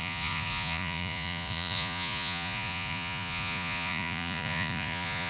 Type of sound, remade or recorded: remade